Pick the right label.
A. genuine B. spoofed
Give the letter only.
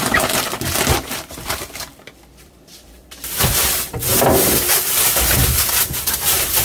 B